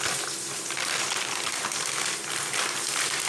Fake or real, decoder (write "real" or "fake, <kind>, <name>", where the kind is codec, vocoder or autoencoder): real